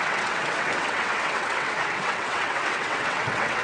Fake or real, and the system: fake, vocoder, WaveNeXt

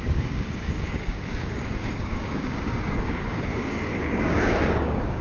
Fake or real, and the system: fake, codec, DAC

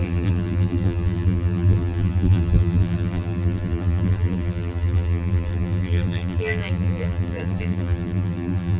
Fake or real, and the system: fake, vocoder, BigVGAN v2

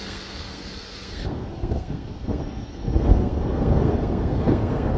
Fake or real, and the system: fake, codec, SNAC